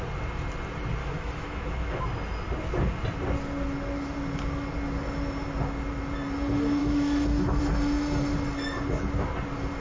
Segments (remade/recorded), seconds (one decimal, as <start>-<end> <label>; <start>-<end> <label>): 0.0-1.0 recorded; 1.0-2.0 remade; 2.0-6.8 recorded; 6.8-7.6 remade; 7.6-9.8 recorded